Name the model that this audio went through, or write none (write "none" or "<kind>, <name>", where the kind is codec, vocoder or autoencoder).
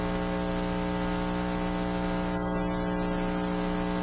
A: none